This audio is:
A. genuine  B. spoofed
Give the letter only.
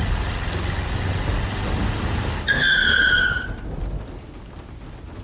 A